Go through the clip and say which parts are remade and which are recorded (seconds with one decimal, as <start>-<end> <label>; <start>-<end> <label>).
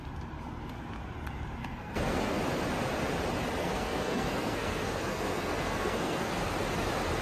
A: 0.0-1.6 recorded; 1.6-2.4 remade; 2.4-3.6 recorded; 3.6-6.3 remade; 6.3-7.2 recorded